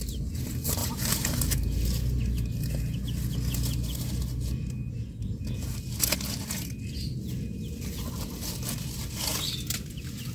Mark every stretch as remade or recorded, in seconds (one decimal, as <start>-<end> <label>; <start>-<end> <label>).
0.0-0.8 recorded; 0.8-1.4 remade; 1.4-10.3 recorded